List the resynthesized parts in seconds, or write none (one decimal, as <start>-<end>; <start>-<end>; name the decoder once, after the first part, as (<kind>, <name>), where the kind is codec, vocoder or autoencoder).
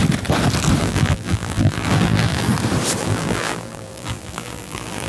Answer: 0.8-2.5 (vocoder, BigVGAN v2); 3.0-5.1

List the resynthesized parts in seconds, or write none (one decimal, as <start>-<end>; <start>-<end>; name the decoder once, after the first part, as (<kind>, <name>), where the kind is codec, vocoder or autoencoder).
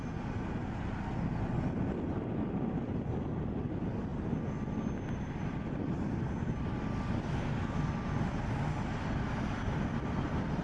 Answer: none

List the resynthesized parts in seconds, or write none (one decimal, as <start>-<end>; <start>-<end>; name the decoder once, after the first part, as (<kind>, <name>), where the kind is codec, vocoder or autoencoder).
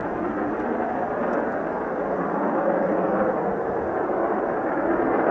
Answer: none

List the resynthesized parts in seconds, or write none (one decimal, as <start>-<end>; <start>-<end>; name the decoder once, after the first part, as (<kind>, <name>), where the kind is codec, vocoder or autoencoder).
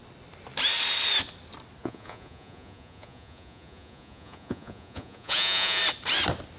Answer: 1.8-5.8 (vocoder, Vocos)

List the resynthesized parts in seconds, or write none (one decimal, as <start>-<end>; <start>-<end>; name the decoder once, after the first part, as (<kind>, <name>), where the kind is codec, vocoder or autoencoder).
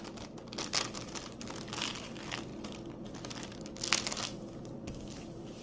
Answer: none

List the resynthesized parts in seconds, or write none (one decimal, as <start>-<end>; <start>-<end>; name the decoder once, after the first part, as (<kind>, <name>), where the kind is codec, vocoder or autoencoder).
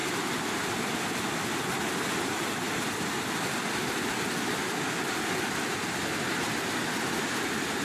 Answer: none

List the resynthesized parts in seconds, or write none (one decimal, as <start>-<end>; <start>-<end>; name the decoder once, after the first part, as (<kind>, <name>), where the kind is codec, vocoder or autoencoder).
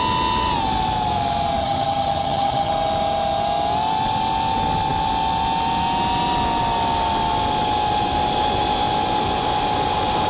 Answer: 1.6-2.7 (vocoder, HiFi-GAN)